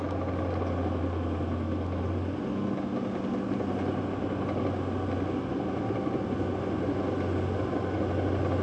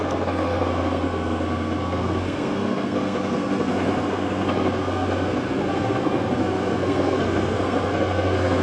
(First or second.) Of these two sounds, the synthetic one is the second